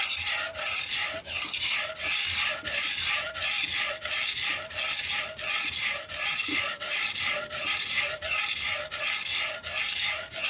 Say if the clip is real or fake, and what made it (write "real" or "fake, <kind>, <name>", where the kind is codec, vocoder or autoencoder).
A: real